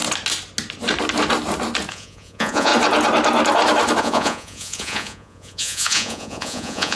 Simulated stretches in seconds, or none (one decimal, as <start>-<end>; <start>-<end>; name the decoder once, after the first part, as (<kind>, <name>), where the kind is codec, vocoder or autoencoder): 1.9-2.7 (vocoder, Vocos); 4.0-7.0